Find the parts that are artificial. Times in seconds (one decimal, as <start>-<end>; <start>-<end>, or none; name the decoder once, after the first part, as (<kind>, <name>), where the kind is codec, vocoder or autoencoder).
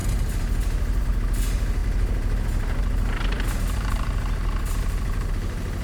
0.0-5.8 (vocoder, BigVGAN v2)